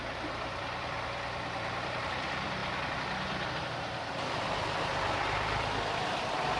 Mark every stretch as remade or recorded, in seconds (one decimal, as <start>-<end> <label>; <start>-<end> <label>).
0.0-2.6 remade; 2.6-3.5 recorded; 3.5-6.6 remade